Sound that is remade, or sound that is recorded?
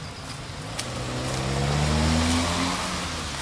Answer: recorded